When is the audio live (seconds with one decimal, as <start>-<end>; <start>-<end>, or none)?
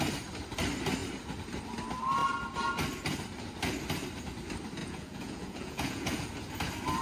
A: 0.0-4.8; 6.3-7.0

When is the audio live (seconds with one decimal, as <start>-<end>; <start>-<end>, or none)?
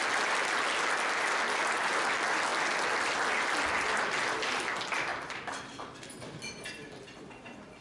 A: 0.0-7.8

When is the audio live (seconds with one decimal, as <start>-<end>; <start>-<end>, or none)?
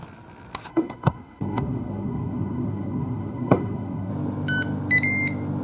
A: 0.0-0.7; 4.1-5.6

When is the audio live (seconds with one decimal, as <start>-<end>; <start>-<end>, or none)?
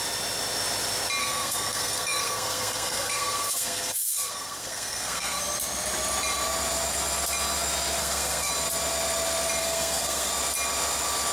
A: 0.0-1.2; 5.4-8.0; 8.5-9.6; 10.3-11.3